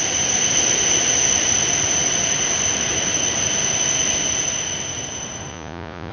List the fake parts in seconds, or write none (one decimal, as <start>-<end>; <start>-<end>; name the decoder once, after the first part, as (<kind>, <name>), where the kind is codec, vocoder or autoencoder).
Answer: 5.5-6.1 (vocoder, Vocos)